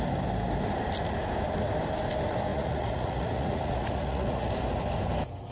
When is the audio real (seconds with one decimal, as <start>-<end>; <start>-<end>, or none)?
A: 0.0-2.5; 4.5-5.5